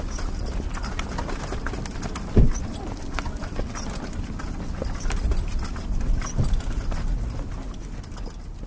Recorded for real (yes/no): yes